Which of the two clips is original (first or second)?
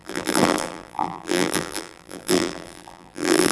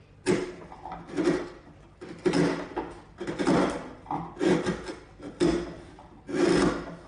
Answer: second